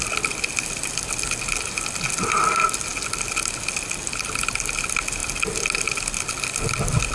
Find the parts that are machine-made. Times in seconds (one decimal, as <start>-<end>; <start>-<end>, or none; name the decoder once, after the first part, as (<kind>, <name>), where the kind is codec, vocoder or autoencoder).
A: none